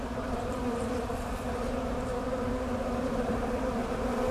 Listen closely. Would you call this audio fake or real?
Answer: fake